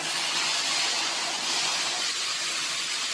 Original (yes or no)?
no